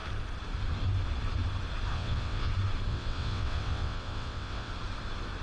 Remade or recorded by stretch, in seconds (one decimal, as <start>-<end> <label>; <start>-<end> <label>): 0.0-1.9 recorded; 1.9-2.5 remade; 2.5-2.9 recorded; 2.9-4.7 remade; 4.7-5.4 recorded